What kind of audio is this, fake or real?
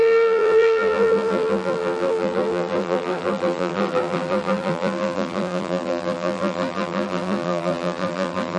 fake